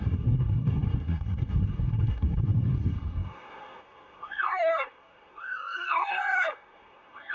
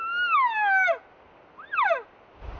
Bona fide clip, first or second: second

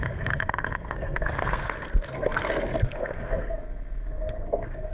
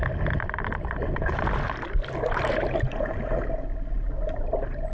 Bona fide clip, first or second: second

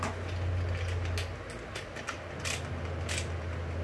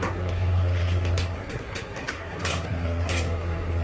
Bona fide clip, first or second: first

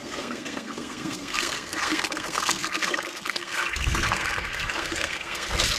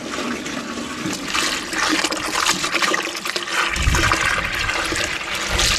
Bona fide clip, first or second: second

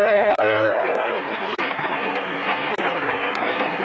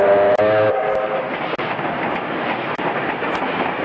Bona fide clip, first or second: second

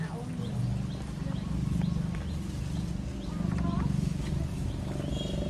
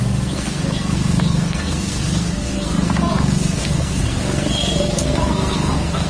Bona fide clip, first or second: first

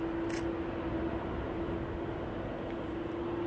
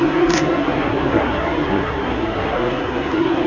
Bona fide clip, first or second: first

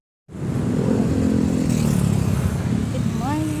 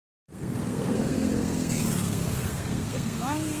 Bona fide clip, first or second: first